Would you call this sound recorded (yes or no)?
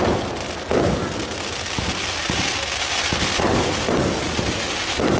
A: yes